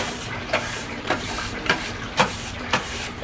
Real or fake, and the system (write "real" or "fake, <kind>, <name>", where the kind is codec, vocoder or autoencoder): fake, vocoder, BigVGAN v2